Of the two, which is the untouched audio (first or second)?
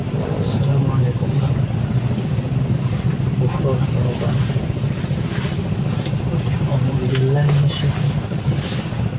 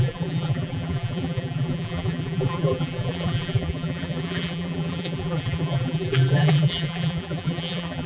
first